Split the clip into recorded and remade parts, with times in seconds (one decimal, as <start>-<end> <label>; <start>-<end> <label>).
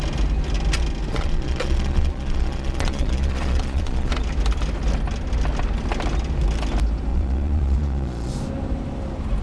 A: 0.0-1.1 recorded; 1.1-4.1 remade; 4.1-7.1 recorded; 7.1-8.3 remade; 8.3-9.4 recorded